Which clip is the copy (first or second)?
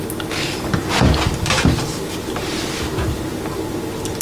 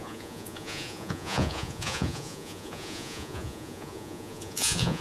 second